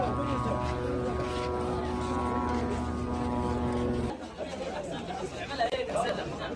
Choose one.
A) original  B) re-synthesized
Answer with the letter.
A